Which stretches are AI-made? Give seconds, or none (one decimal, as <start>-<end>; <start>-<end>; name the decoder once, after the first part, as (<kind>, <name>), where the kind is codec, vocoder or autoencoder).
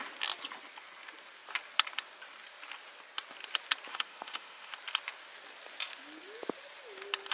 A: 3.9-4.7 (autoencoder, DAC-VAE)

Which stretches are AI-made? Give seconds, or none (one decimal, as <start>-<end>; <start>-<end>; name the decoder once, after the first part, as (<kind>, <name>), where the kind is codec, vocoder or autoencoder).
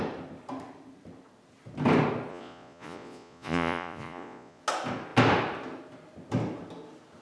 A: 2.3-4.6 (vocoder, Vocos)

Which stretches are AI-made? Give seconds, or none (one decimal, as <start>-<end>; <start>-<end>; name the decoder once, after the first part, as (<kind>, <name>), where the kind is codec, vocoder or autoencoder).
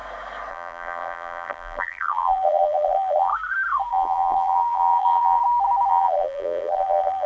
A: 0.5-3.3 (vocoder, BigVGAN v2); 3.9-5.4; 5.9-7.3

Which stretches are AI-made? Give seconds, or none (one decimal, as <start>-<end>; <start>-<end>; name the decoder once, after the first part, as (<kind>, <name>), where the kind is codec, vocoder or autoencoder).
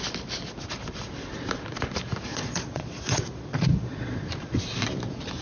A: 2.3-4.6 (vocoder, Vocos)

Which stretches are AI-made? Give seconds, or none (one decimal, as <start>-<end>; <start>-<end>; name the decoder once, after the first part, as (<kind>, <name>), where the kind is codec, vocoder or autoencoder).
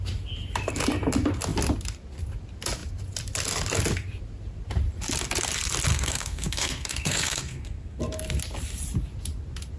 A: 5.9-8.0 (codec, SNAC)